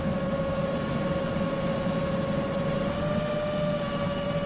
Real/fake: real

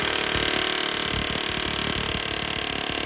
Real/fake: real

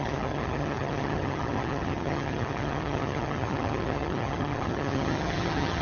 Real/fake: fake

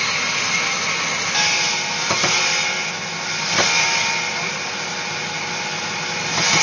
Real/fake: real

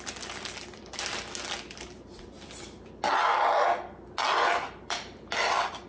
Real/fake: real